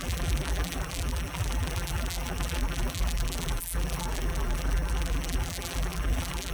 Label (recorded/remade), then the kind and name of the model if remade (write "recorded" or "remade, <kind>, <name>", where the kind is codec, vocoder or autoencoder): remade, vocoder, BigVGAN v2